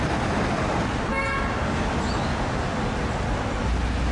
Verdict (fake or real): real